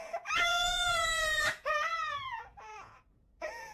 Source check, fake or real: fake